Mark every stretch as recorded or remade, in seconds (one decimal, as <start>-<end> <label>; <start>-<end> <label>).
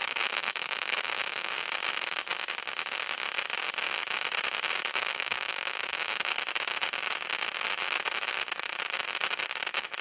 0.0-1.5 remade; 1.5-4.9 recorded; 4.9-6.3 remade; 6.3-10.0 recorded